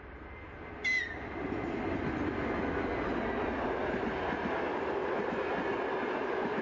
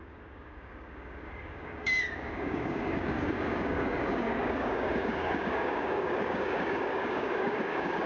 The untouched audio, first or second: first